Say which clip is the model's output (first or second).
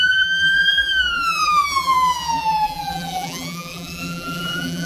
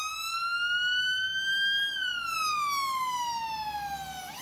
first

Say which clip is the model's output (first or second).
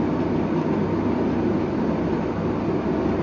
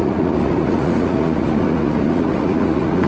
second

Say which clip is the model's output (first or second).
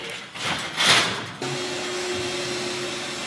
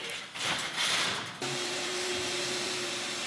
second